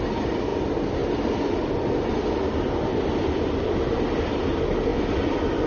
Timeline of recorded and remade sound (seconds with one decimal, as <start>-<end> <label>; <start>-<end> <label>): 0.0-5.7 recorded